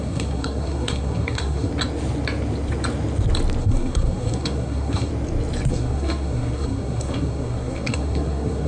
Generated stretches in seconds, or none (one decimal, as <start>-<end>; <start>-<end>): 0.0-1.7; 3.6-5.1; 5.7-8.7